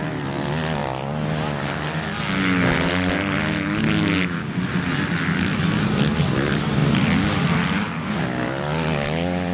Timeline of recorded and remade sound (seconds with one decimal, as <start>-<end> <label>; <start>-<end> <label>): 0.0-9.5 recorded